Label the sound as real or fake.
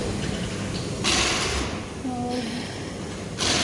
real